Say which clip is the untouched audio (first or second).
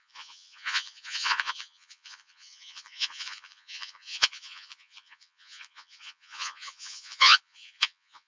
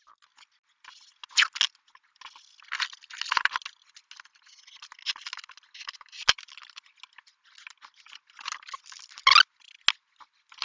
second